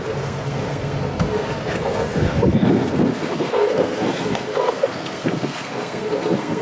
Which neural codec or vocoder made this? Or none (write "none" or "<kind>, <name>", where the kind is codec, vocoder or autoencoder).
codec, SNAC